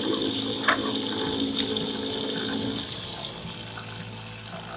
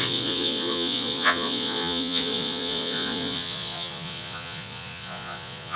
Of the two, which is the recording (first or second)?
first